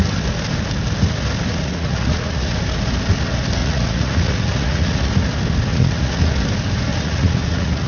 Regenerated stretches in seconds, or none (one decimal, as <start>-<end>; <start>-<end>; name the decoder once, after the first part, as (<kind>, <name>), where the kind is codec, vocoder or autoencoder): 1.5-2.6 (vocoder, Vocos); 3.6-5.1; 5.7-6.3; 6.9-7.9